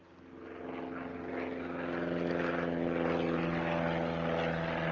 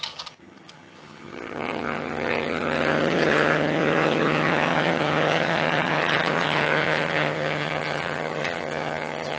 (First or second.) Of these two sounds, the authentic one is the first